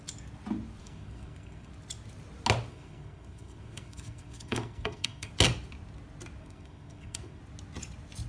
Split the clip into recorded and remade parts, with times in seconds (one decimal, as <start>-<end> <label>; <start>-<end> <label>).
0.0-0.8 recorded; 0.8-1.7 remade; 1.7-2.7 recorded; 2.7-5.3 remade; 5.3-6.4 recorded; 6.4-7.4 remade; 7.4-8.3 recorded

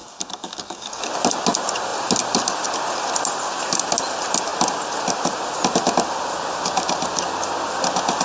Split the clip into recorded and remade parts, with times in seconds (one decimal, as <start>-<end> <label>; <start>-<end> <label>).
0.0-1.1 remade; 1.1-8.2 recorded